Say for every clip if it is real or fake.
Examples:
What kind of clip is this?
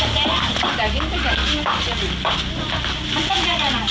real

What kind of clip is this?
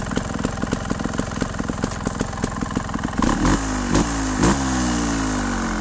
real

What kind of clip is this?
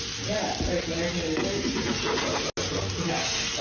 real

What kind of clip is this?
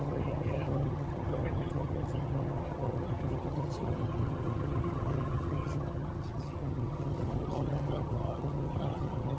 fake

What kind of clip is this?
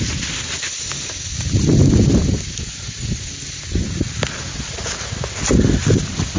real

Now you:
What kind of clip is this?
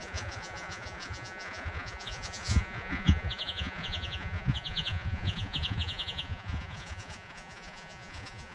fake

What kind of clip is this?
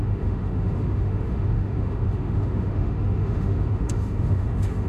fake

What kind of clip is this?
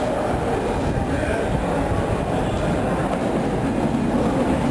real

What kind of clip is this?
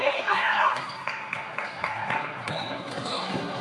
fake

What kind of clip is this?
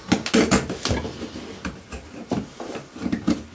real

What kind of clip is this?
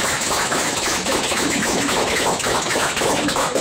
fake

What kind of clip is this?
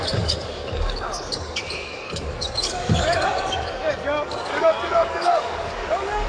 fake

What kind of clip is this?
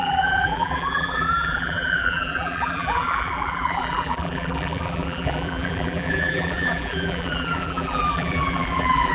fake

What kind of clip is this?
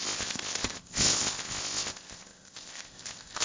fake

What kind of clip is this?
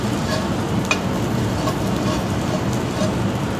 real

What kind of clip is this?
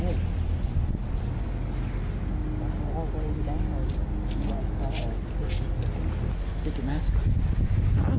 real